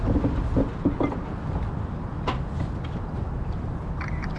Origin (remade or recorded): recorded